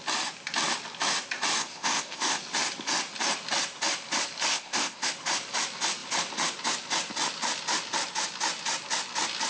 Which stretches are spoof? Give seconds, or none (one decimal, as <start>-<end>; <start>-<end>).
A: 1.6-2.4; 4.5-5.1